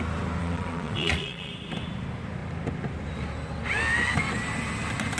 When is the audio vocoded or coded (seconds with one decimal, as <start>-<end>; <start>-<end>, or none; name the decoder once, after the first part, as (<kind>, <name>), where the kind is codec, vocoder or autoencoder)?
0.4-1.5 (vocoder, Vocos)